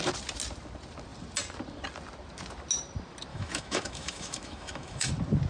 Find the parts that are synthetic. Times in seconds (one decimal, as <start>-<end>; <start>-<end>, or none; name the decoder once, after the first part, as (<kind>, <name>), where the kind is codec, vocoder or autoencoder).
3.3-5.1 (autoencoder, DAC-VAE)